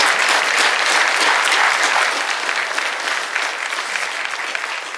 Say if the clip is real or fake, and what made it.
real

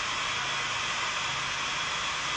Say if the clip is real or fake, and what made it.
real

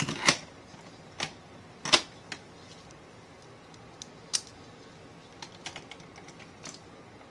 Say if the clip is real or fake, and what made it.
real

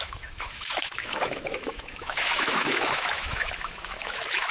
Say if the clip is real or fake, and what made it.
fake, autoencoder, DAC-VAE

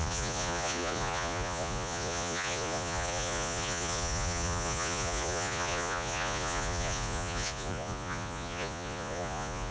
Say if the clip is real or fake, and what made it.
fake, vocoder, Vocos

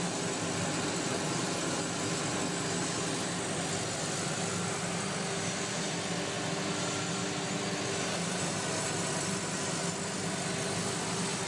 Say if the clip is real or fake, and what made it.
real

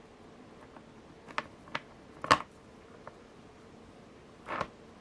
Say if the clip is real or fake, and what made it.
real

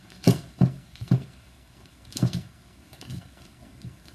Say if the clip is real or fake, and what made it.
fake, codec, SNAC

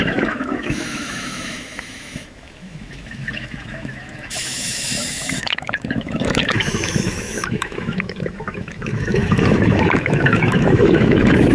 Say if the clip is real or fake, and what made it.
fake, autoencoder, DAC-VAE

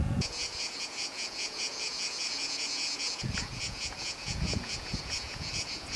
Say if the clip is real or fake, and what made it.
fake, vocoder, Vocos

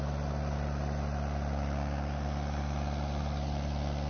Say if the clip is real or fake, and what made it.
real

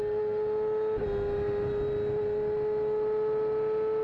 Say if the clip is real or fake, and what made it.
real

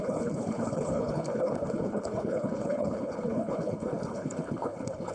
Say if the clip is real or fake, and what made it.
fake, codec, HILCodec